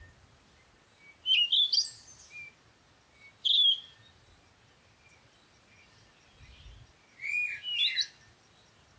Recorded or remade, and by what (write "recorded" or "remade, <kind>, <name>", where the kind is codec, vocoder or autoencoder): recorded